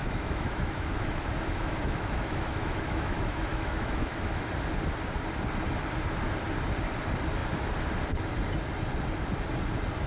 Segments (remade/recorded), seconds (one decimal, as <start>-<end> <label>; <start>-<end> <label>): 0.0-4.5 remade; 4.5-10.1 recorded